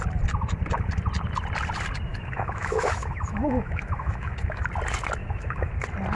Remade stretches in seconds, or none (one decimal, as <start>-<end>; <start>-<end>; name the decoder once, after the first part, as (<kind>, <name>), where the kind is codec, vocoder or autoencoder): 2.1-4.7 (autoencoder, DAC-VAE); 5.2-5.7